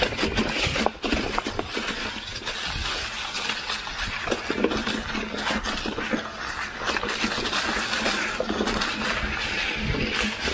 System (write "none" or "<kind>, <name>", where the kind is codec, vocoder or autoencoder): none